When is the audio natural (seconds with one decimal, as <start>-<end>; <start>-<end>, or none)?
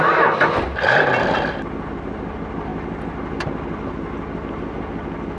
0.0-5.4